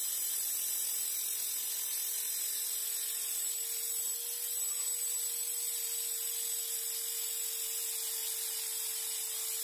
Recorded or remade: recorded